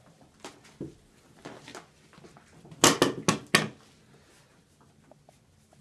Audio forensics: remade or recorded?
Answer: recorded